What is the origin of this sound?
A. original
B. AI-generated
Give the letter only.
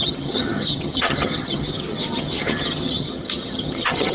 B